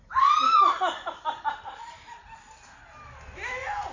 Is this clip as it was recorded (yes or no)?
yes